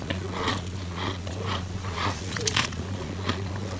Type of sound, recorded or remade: remade